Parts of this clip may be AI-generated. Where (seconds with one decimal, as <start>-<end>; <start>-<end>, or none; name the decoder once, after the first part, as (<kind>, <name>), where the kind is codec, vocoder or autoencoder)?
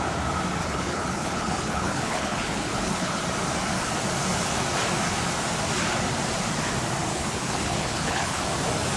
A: 0.6-3.2 (codec, HILCodec); 7.1-8.4